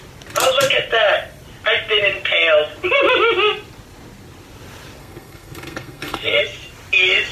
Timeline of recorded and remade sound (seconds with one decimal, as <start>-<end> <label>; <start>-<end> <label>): 0.0-5.0 recorded; 5.0-6.4 remade; 6.4-7.3 recorded

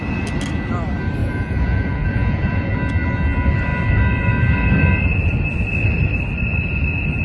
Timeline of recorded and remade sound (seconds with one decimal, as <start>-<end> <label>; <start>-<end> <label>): 0.0-1.2 recorded; 1.2-2.7 remade; 2.7-7.2 recorded

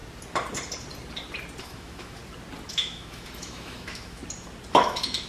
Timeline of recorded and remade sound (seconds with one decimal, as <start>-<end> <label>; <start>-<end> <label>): 0.0-1.6 recorded; 1.6-2.2 remade; 2.2-2.7 recorded; 2.7-4.2 remade; 4.2-4.7 recorded; 4.7-5.3 remade

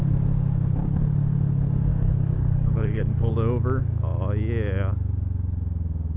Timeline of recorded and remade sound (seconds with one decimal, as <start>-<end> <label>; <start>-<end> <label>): 0.0-1.9 recorded; 1.9-3.3 remade; 3.3-6.2 recorded

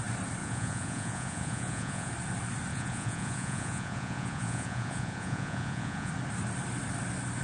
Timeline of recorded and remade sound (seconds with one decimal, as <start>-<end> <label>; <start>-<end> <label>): 0.0-0.4 recorded; 0.4-2.1 remade; 2.1-2.7 recorded; 2.7-6.1 remade; 6.1-7.4 recorded